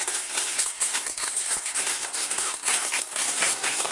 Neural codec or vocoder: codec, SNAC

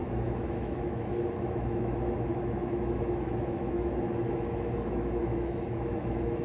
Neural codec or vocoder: autoencoder, DAC-VAE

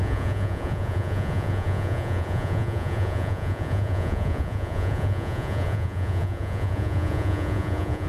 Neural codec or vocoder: vocoder, Vocos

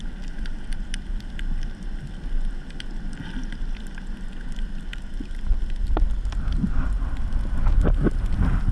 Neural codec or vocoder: none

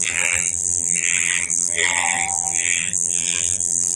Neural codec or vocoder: vocoder, BigVGAN v2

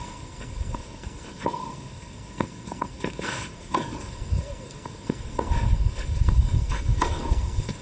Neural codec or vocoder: codec, SNAC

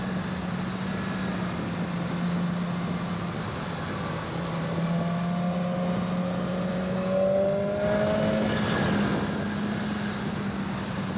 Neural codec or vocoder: none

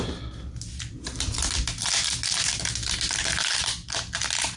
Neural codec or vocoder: none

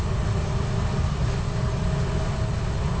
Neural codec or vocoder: none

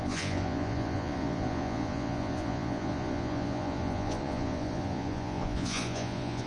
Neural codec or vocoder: vocoder, Vocos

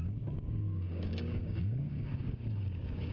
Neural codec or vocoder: codec, DAC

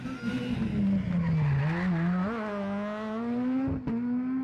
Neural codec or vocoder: none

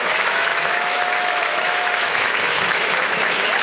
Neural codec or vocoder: autoencoder, DAC-VAE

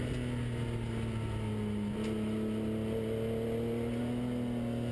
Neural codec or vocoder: none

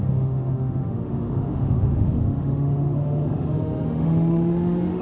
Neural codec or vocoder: autoencoder, DAC-VAE